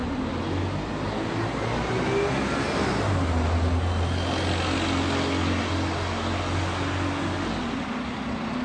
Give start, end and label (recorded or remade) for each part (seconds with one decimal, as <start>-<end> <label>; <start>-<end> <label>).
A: 0.0-8.6 recorded